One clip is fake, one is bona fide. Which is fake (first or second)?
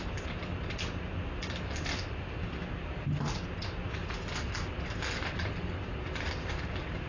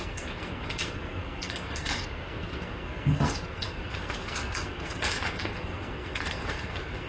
second